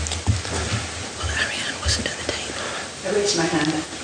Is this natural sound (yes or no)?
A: yes